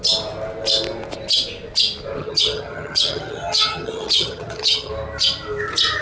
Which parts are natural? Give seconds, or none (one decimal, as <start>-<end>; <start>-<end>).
0.0-2.2; 4.9-6.0